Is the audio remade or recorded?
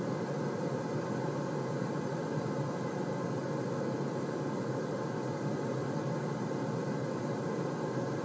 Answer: recorded